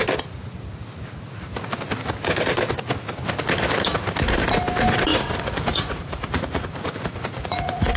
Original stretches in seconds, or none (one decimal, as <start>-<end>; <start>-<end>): 0.0-5.1